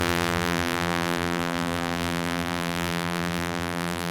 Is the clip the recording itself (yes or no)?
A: no